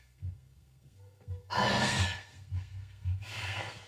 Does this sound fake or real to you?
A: fake